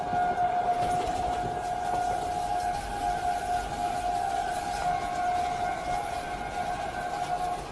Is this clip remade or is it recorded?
recorded